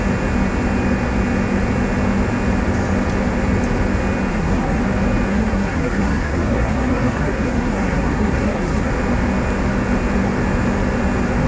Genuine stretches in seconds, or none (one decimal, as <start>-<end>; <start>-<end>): 0.0-4.3; 4.8-5.3; 8.9-11.5